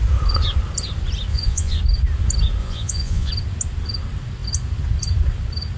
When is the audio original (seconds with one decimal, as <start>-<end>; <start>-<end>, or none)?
0.0-1.3; 1.8-2.6; 3.3-5.8